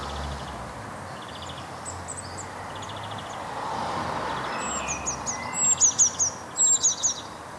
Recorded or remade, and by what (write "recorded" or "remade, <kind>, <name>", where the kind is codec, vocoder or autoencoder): recorded